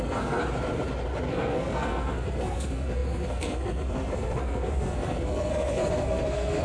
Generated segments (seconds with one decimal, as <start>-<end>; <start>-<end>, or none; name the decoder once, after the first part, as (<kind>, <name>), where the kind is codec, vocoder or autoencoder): 0.0-0.4 (codec, SNAC); 1.3-6.6